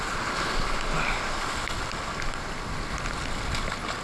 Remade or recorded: recorded